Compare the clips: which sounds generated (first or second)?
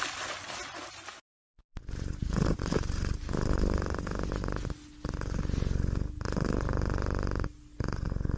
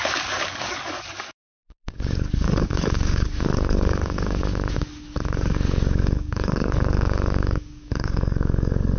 second